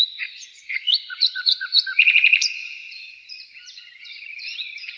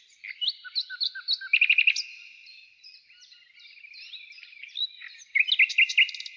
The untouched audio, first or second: second